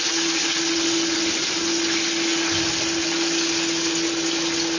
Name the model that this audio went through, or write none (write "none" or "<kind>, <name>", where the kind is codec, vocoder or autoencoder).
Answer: none